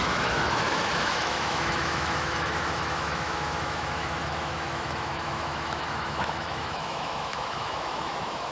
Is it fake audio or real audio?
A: fake